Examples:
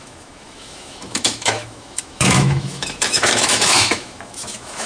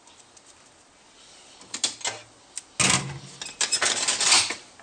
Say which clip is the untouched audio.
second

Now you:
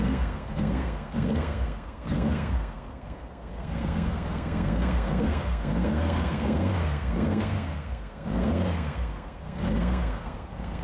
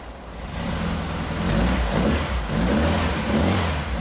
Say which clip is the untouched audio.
second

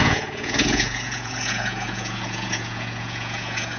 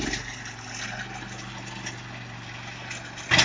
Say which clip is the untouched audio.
second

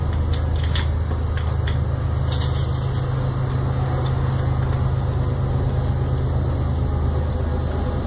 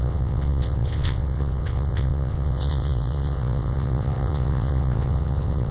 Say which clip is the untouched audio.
first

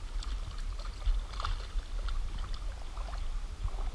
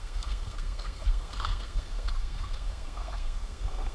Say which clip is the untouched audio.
first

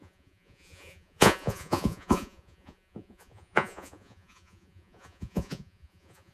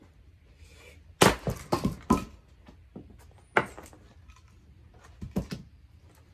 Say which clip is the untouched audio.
second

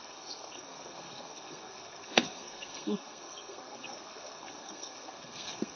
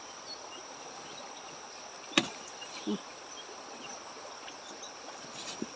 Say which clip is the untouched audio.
second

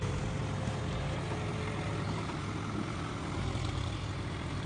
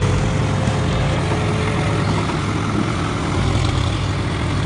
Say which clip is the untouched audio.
second